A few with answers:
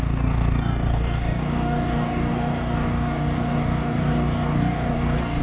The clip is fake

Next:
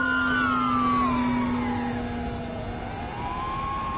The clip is real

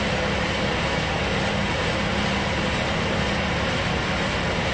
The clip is fake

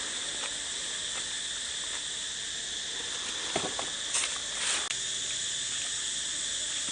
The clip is real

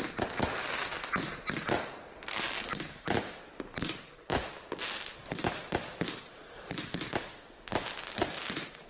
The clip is real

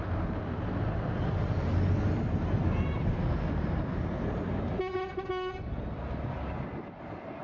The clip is real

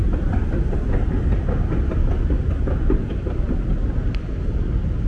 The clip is real